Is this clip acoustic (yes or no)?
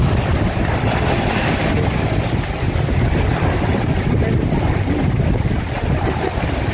yes